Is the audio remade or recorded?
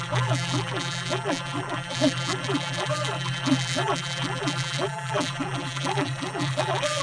remade